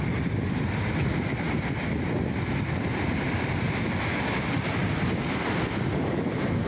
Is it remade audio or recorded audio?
recorded